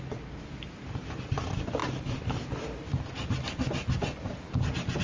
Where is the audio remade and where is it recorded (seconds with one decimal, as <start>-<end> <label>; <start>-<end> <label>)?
0.0-5.0 recorded